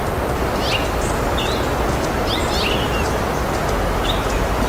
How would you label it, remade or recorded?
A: recorded